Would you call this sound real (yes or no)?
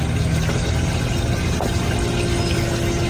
yes